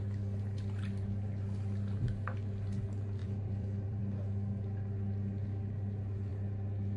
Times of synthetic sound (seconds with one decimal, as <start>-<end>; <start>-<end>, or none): 3.2-4.0